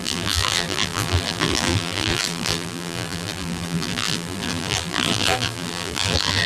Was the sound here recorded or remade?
remade